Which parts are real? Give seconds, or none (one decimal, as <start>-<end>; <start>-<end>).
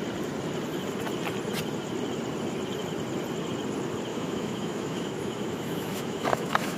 0.0-4.1